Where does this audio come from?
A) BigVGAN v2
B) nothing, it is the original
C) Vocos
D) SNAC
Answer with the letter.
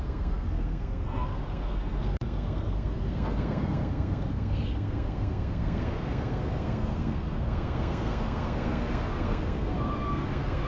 D